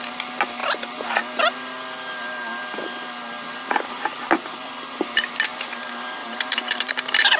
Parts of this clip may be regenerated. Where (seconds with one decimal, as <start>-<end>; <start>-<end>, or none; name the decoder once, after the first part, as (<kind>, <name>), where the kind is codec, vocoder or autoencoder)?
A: 6.2-6.9 (vocoder, BigVGAN v2)